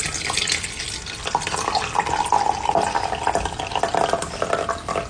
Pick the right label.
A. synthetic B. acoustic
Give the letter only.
B